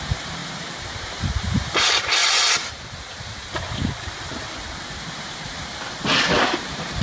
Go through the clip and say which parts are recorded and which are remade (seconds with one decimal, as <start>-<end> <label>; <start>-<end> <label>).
0.0-7.0 recorded